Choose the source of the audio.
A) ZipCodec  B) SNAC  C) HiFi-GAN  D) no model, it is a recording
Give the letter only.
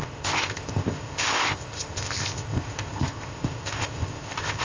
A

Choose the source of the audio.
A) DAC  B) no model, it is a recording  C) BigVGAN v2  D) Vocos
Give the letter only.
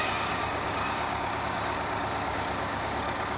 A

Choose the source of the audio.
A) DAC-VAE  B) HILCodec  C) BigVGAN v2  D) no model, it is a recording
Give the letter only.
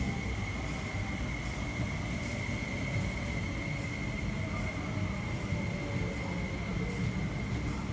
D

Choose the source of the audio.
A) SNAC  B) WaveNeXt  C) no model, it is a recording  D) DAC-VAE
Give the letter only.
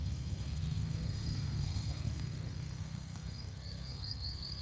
A